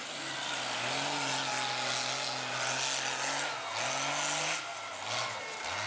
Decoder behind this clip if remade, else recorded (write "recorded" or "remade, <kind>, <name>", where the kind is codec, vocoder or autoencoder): recorded